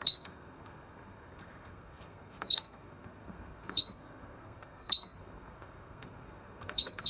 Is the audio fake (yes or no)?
yes